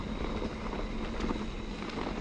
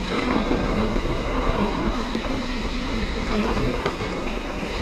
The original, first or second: first